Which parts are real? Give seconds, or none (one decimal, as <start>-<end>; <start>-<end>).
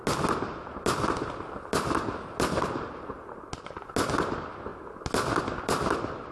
0.0-6.3